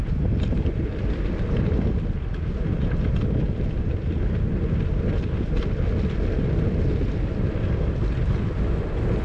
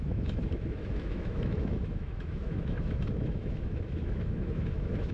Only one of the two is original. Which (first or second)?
first